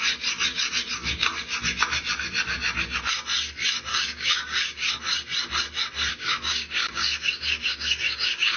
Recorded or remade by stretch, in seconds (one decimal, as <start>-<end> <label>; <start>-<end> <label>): 0.0-3.9 recorded; 3.9-4.9 remade; 4.9-6.1 recorded; 6.1-8.6 remade